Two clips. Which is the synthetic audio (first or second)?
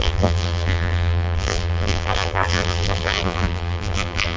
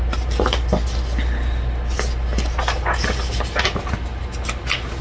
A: first